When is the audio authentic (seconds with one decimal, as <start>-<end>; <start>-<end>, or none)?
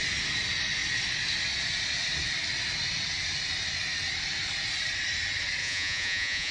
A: 0.0-5.6